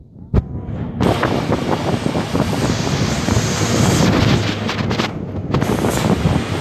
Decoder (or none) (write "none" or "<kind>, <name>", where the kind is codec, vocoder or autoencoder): none